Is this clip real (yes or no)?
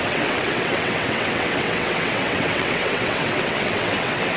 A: no